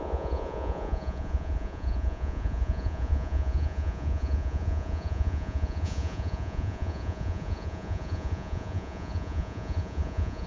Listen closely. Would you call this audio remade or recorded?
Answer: remade